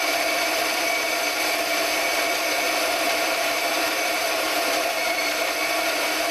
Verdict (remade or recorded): remade